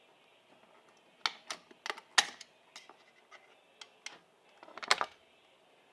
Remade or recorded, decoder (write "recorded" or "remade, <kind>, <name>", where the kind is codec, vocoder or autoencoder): recorded